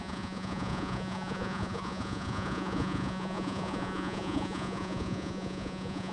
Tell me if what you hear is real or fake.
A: fake